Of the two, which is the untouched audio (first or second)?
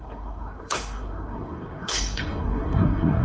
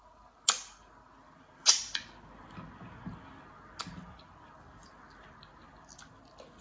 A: second